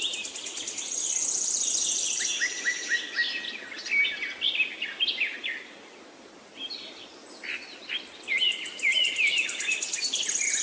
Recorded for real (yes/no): yes